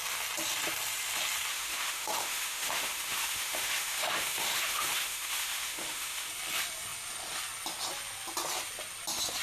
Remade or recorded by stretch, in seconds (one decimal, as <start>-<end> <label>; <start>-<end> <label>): 0.0-1.5 recorded; 1.5-6.3 remade; 6.3-9.4 recorded